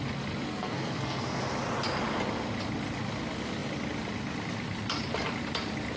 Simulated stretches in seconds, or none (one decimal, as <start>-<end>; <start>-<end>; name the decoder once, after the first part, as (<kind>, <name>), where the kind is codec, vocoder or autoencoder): 0.5-1.4 (codec, SNAC)